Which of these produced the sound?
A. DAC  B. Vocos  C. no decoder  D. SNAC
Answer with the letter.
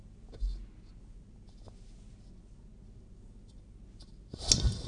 C